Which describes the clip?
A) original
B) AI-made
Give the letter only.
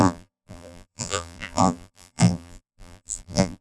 B